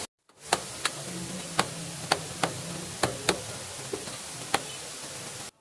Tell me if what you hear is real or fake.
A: real